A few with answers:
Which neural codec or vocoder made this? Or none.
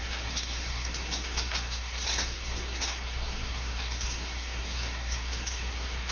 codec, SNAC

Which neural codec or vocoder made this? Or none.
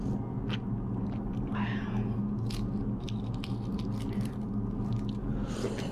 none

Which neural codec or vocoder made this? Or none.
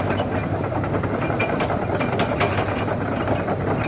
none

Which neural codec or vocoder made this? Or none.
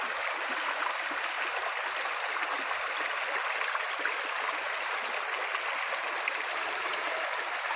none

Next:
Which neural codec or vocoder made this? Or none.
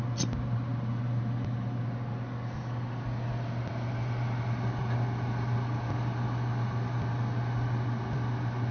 none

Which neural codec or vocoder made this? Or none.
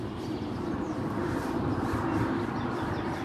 none